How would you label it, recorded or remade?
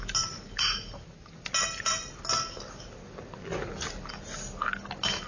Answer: recorded